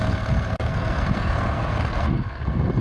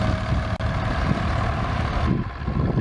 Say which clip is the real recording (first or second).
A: second